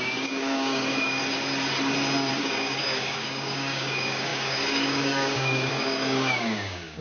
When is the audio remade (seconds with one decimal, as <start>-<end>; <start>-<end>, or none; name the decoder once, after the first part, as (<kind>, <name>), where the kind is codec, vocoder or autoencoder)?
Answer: 0.0-1.2 (codec, DAC); 2.3-7.0

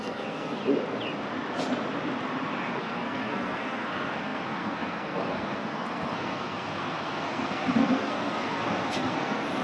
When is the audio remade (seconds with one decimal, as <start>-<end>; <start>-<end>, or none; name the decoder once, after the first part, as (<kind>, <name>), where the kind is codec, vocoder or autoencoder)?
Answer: 0.0-0.6 (codec, SNAC); 2.8-9.6

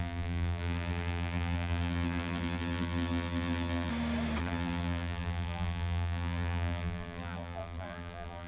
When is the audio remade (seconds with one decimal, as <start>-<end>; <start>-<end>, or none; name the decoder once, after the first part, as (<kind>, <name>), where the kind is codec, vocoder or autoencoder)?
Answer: 0.0-3.9 (vocoder, BigVGAN v2); 4.4-8.5

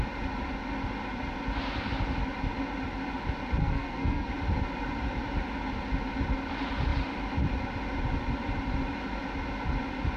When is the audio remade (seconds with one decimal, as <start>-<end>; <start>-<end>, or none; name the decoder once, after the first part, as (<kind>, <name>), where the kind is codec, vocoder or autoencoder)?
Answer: 3.6-4.3 (codec, SNAC)

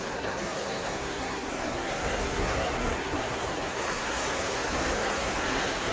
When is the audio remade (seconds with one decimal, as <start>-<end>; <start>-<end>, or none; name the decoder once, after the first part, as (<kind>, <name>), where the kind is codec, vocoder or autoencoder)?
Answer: 0.0-5.9 (codec, SNAC)